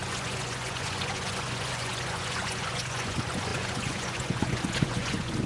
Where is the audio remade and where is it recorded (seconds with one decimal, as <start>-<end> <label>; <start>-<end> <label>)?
0.0-5.5 remade